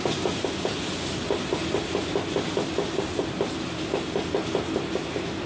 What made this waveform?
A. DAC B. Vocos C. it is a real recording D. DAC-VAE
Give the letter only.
C